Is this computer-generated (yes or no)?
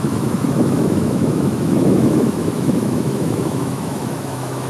yes